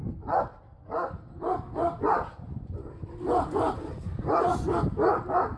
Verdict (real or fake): real